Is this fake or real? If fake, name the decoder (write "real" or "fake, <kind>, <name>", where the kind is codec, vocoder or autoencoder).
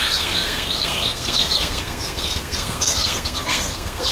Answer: fake, codec, SNAC